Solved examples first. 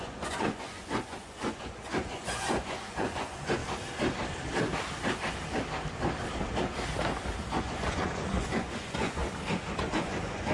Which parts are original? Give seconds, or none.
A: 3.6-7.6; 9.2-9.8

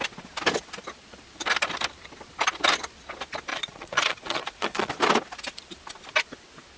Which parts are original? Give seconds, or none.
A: 0.0-3.5; 4.9-6.8

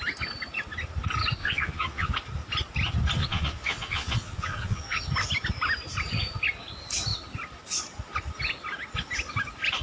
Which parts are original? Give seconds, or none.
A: 0.0-1.4; 2.1-3.2; 5.0-9.8